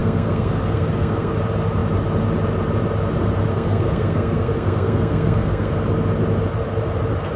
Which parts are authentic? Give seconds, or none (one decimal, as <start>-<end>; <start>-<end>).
1.3-3.5; 5.7-7.4